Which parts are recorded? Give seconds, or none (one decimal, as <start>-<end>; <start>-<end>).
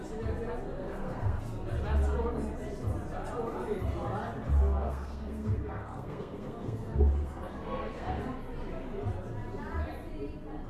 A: 0.0-0.8; 1.4-4.6; 8.2-10.7